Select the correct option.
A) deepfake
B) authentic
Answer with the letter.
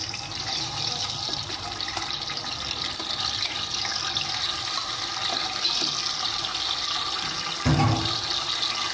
B